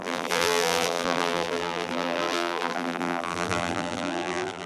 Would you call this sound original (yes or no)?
no